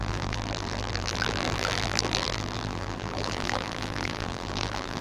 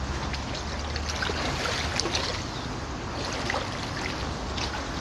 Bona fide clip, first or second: second